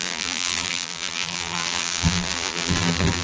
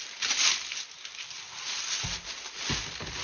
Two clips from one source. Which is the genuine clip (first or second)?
second